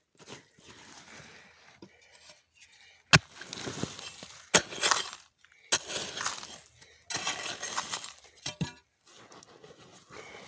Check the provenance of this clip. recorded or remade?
recorded